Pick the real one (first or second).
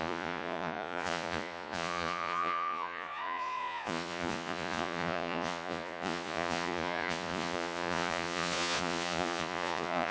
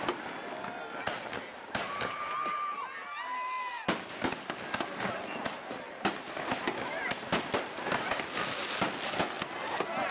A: second